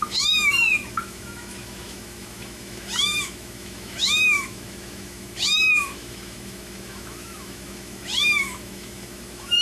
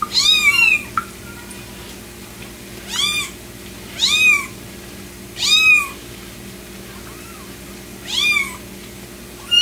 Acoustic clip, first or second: second